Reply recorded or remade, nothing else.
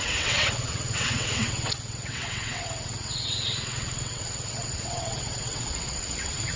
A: remade